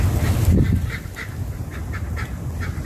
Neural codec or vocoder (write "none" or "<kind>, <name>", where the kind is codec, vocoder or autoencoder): none